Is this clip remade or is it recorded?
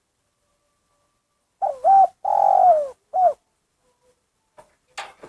recorded